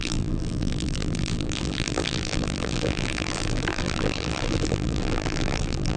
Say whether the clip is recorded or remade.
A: remade